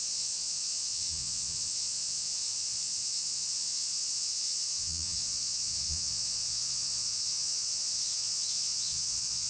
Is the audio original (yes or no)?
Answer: no